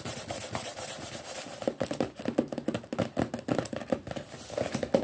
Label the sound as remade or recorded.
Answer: recorded